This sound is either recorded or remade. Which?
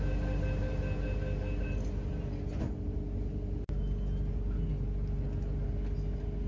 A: recorded